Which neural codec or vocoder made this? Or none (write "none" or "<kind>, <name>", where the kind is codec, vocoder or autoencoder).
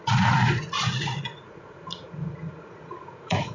vocoder, Vocos